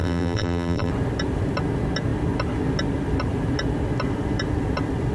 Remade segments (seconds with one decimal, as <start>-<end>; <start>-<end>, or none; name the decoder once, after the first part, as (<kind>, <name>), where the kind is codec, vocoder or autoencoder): 0.0-0.9 (vocoder, BigVGAN v2)

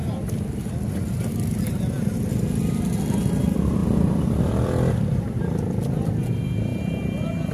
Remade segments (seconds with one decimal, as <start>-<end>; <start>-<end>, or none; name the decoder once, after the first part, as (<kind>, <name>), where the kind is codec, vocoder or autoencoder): 2.7-6.7 (vocoder, BigVGAN v2)

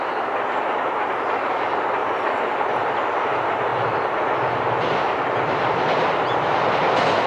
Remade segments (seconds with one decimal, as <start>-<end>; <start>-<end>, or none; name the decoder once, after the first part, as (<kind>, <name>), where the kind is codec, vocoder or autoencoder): 2.0-2.9 (vocoder, BigVGAN v2)

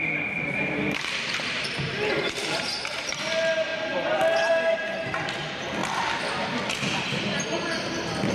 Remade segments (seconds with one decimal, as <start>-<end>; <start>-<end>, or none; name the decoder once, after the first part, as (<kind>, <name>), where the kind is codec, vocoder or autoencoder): 0.0-3.7 (vocoder, BigVGAN v2); 4.5-5.8

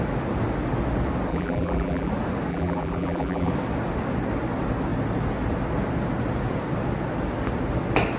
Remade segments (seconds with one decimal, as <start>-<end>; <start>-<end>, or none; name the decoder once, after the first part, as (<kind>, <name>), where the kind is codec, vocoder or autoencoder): 1.3-2.1 (vocoder, BigVGAN v2); 2.5-3.5

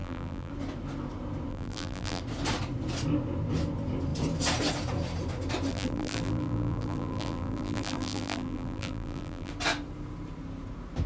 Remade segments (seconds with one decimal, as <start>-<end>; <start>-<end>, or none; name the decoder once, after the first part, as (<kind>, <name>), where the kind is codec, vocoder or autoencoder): 0.0-0.5 (vocoder, BigVGAN v2); 1.5-2.2; 5.7-9.5